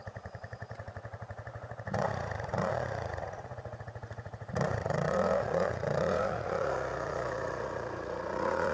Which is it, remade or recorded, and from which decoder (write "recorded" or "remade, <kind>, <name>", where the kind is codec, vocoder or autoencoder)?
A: remade, vocoder, Vocos